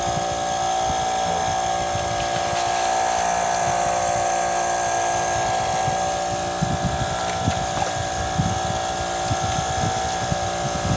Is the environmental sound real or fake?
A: real